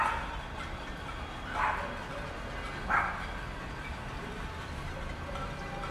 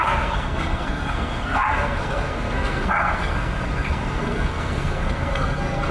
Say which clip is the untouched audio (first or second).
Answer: first